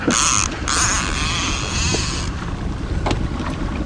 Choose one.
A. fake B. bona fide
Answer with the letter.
B